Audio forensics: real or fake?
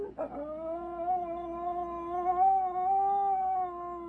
real